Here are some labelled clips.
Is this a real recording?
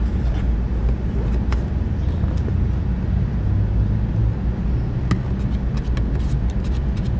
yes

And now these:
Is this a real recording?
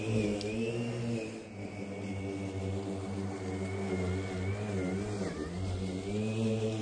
yes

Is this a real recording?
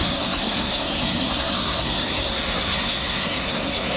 no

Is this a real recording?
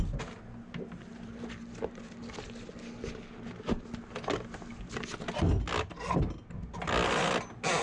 yes